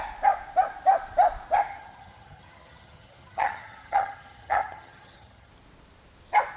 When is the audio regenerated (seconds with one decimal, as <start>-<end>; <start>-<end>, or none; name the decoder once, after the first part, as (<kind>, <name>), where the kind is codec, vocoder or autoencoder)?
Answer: 1.7-5.5 (vocoder, HiFi-GAN)